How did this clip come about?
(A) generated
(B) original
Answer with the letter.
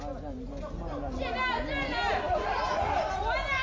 B